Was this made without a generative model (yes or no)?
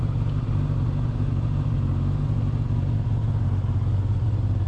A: yes